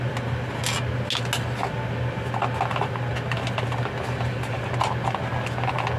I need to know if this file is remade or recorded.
recorded